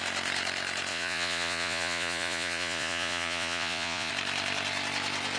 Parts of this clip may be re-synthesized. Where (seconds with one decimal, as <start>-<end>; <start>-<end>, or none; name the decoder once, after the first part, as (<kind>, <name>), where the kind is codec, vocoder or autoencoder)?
0.9-4.1 (vocoder, Vocos)